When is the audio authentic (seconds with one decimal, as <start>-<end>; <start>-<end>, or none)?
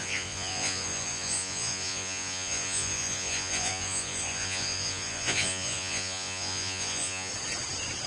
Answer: 7.3-8.1